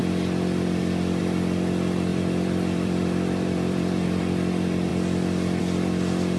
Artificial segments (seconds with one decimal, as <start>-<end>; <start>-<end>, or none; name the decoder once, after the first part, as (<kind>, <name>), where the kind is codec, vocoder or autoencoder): 2.1-4.2 (vocoder, BigVGAN v2)